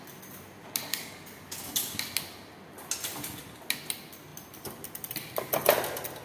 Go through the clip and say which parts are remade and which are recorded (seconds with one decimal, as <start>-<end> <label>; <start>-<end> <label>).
0.0-0.9 recorded; 0.9-2.0 remade; 2.0-6.2 recorded